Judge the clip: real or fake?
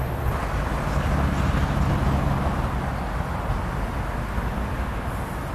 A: real